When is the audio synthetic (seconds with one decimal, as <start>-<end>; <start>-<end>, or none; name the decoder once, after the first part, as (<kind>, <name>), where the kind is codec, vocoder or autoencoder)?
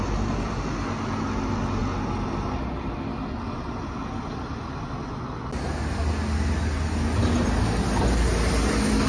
none